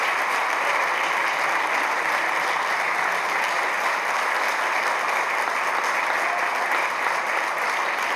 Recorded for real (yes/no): yes